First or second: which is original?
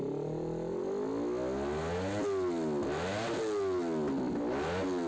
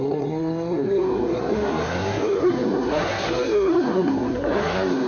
first